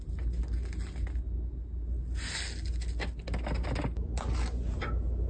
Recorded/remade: recorded